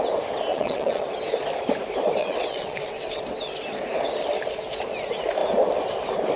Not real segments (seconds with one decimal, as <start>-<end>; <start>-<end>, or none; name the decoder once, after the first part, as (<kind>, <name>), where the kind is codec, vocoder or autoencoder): 0.5-1.1 (vocoder, WaveNeXt); 2.2-3.2